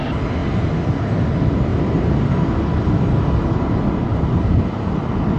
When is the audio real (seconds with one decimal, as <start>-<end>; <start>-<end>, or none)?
0.0-1.7; 2.3-4.0; 5.0-5.4